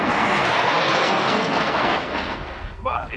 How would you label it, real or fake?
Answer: fake